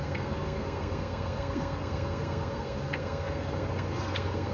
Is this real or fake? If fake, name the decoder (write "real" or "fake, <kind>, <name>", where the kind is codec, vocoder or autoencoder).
fake, codec, SNAC